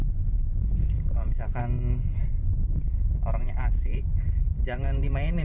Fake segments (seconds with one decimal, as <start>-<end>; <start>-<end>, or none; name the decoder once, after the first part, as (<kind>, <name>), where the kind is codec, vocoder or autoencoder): 0.7-1.6 (vocoder, BigVGAN v2); 2.3-5.4